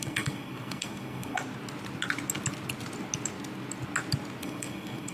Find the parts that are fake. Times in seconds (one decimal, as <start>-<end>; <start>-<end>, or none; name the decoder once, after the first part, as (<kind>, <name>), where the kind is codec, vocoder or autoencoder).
0.0-1.4 (codec, SNAC); 4.4-5.1